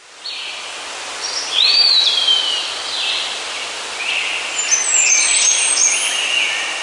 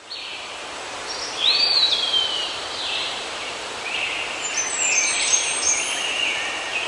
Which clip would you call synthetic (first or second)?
second